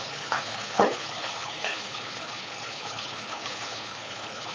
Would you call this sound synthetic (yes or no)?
yes